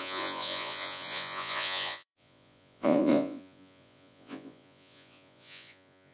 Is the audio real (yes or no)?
no